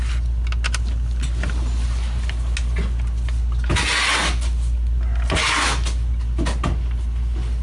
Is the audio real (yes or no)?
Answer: yes